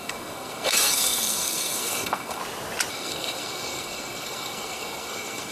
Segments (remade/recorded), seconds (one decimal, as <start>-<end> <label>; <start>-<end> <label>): 0.0-2.4 remade; 2.4-2.9 recorded; 2.9-5.5 remade